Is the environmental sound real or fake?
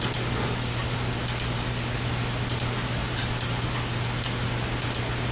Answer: real